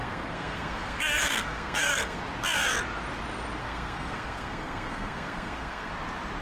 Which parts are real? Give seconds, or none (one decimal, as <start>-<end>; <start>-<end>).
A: 2.2-3.6; 5.9-6.4